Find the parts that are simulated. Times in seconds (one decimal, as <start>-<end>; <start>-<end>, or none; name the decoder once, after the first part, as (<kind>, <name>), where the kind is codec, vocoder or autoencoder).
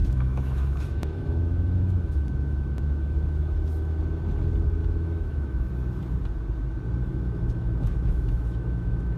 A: 0.0-4.0 (autoencoder, DAC-VAE); 4.8-5.7; 7.1-9.2